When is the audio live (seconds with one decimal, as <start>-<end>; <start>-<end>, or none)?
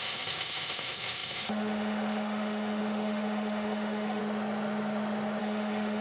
4.2-5.4